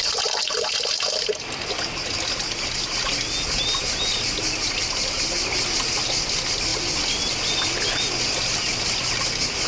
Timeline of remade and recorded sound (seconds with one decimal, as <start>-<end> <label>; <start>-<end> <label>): 0.0-6.7 recorded; 6.7-9.7 remade